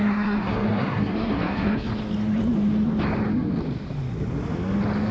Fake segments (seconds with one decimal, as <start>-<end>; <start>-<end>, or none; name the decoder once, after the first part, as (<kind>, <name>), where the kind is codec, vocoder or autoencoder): 0.0-1.9 (codec, SNAC)